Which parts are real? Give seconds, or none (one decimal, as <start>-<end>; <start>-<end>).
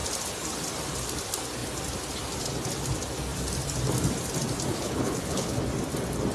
0.0-4.7; 5.6-6.3